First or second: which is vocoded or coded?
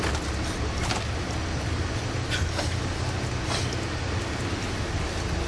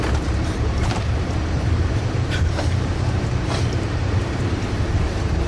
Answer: second